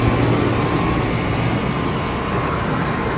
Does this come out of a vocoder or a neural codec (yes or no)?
no